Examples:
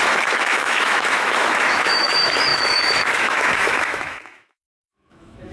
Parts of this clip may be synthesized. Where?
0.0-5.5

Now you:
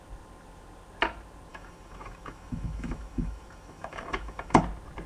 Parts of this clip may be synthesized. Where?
1.5-4.6